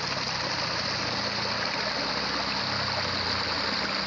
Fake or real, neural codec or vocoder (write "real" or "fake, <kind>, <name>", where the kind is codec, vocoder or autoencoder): real